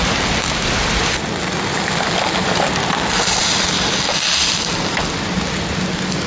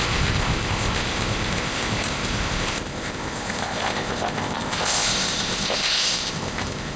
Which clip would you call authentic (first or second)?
first